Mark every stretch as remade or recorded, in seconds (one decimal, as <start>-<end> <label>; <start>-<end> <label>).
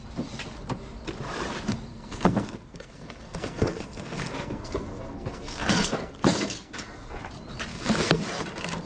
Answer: 0.0-1.9 recorded; 1.9-7.2 remade; 7.2-7.7 recorded; 7.7-8.2 remade; 8.2-8.9 recorded